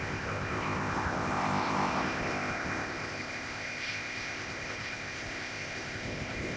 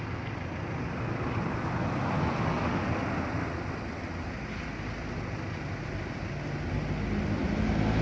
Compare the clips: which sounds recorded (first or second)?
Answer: second